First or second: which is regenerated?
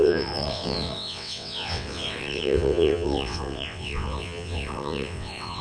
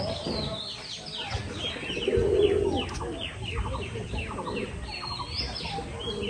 first